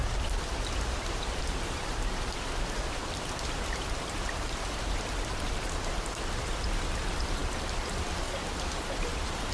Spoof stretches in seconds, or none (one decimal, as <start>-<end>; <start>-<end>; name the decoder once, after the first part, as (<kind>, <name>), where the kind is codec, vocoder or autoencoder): 0.0-1.4 (vocoder, BigVGAN v2); 3.0-6.4; 7.4-7.9